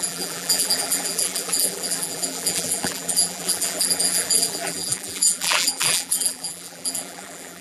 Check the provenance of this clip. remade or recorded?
remade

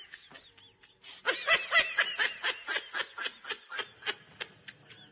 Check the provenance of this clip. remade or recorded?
recorded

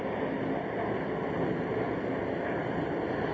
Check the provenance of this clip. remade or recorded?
recorded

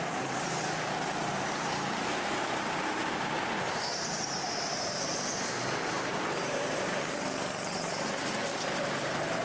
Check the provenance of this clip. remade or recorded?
remade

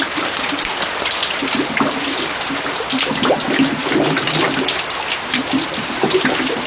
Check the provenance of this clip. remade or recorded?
remade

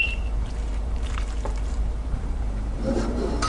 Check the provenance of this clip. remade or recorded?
remade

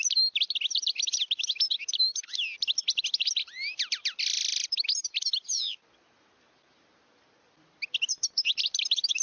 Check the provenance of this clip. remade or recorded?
remade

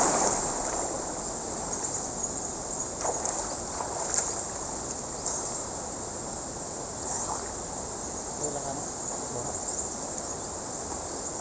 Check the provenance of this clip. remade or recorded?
recorded